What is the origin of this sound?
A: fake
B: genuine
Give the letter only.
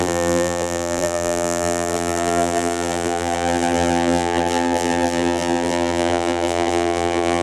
A